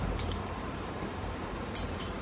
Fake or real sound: fake